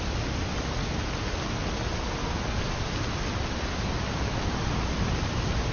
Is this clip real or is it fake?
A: real